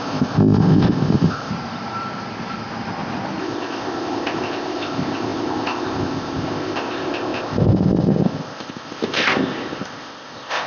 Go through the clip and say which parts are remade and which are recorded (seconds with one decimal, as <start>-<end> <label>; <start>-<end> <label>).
0.0-1.5 remade; 1.5-3.4 recorded; 3.4-10.7 remade